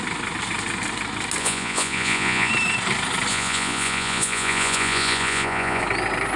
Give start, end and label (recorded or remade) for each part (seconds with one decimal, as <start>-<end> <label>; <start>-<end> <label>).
0.0-1.4 recorded; 1.4-2.5 remade; 2.5-3.3 recorded; 3.3-5.8 remade; 5.8-6.4 recorded